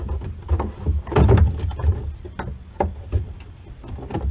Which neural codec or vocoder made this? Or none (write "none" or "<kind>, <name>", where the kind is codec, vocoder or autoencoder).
none